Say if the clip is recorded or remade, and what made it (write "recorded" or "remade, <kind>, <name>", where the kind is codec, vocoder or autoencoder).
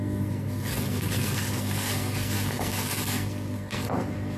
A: remade, codec, SNAC